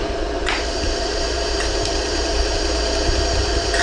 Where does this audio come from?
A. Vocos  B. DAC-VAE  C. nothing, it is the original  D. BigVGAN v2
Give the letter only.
D